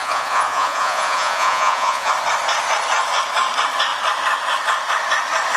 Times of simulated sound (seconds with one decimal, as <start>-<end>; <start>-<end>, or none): 0.0-2.1